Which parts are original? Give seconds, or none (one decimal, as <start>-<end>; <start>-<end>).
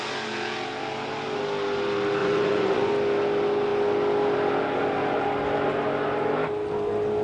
0.0-2.2; 2.9-7.2